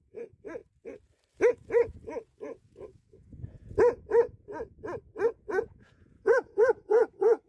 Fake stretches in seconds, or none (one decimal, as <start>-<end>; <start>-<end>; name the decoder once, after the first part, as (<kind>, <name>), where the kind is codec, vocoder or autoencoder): 0.0-0.6 (vocoder, Vocos); 1.5-4.5; 5.4-7.5